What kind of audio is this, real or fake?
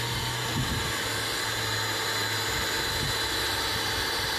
real